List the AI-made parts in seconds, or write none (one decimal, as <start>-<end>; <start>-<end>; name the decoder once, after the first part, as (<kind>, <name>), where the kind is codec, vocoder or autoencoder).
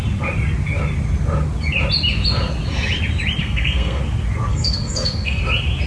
3.4-4.0 (codec, SNAC); 4.5-5.4